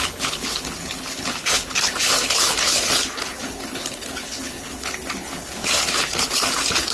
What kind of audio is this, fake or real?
fake